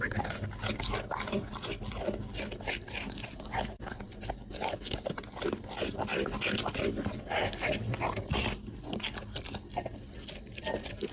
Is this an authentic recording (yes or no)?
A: yes